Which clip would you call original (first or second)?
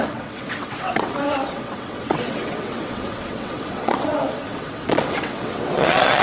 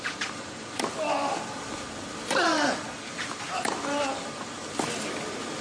second